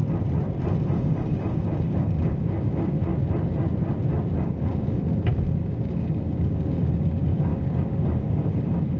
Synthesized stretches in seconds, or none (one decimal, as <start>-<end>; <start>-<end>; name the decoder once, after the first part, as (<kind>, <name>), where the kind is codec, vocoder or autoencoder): 1.0-3.1 (codec, DAC); 4.4-9.0